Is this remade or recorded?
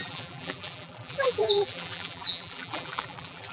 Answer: remade